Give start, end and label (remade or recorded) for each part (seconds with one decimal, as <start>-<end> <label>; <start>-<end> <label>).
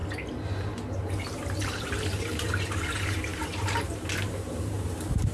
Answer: 0.0-5.3 remade